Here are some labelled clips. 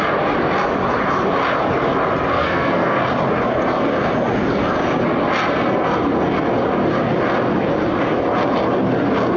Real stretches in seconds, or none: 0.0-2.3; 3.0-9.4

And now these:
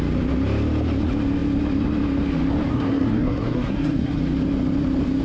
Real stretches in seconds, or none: 0.0-2.7; 4.2-5.2

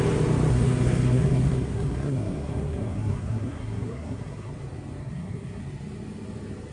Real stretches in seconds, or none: 0.0-0.5; 4.5-5.0; 5.6-6.7

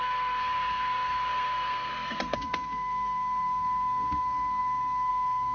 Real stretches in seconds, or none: none

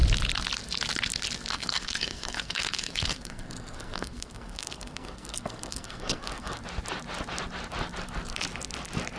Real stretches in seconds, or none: 0.0-1.5; 6.6-9.2

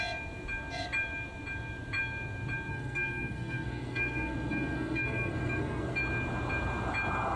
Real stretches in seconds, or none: 0.0-2.7; 6.0-7.4

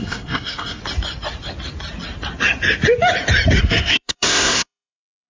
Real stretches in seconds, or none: 0.8-3.6

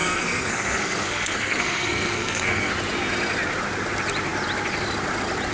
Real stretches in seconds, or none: 2.7-5.5